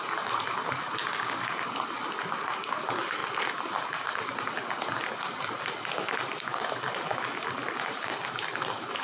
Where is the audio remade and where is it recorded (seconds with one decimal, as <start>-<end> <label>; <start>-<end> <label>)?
0.0-1.0 recorded; 1.0-1.5 remade; 1.5-9.0 recorded